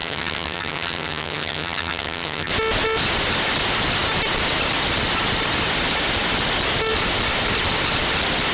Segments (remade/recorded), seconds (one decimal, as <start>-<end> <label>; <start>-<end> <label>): 0.0-2.5 remade; 2.5-8.5 recorded